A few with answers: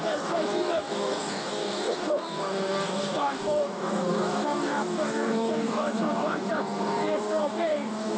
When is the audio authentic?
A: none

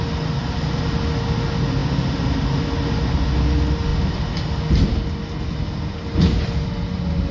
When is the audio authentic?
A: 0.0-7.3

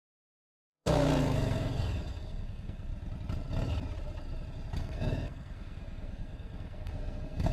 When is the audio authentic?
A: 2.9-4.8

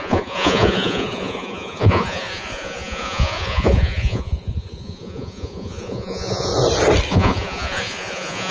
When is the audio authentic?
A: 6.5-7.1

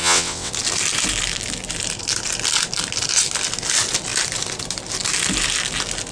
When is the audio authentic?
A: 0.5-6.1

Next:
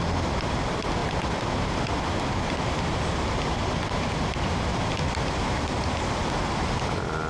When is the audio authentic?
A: 0.0-7.3

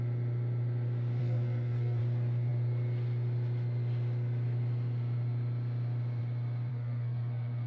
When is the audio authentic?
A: 0.0-1.2; 2.0-6.7

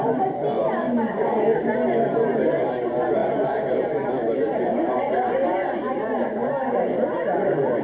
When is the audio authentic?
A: 0.0-0.8; 1.7-7.8